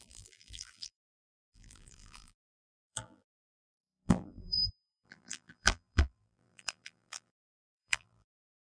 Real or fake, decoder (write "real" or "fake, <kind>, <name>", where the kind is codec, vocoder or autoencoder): fake, vocoder, BigVGAN v2